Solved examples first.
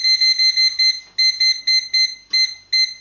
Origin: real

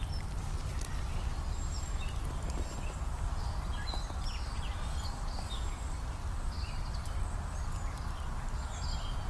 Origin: real